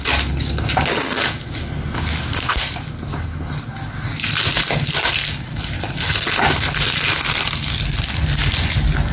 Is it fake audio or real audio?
real